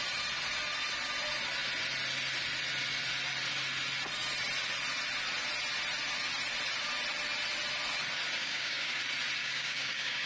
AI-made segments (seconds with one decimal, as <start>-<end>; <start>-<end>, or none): 8.4-9.0; 9.4-10.3